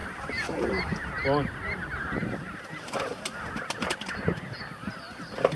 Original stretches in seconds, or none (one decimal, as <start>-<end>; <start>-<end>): 0.0-5.6